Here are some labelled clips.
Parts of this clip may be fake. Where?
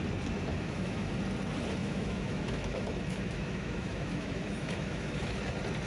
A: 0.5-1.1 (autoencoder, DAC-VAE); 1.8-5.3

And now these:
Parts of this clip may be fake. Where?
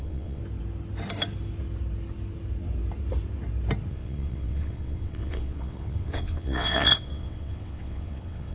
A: 0.0-0.4 (vocoder, WaveNeXt); 3.9-8.5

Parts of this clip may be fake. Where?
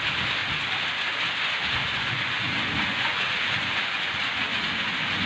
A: 1.8-5.3 (vocoder, Vocos)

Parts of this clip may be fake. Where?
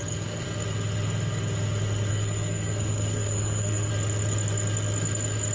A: 2.1-3.9 (codec, SNAC)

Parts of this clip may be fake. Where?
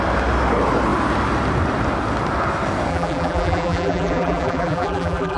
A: 2.9-5.4 (vocoder, BigVGAN v2)